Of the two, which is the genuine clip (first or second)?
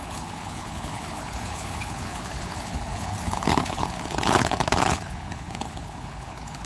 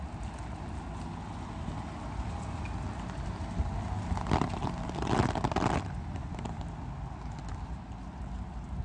second